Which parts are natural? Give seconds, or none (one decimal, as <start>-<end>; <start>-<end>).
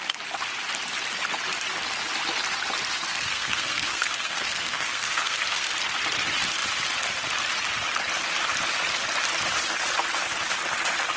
0.0-3.1; 5.7-11.2